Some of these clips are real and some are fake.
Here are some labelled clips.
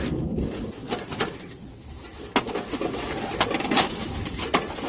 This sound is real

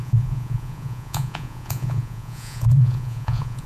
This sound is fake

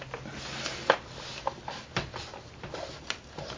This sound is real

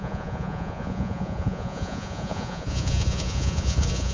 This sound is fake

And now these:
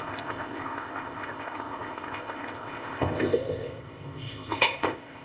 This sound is fake